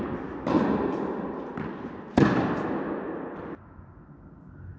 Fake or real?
real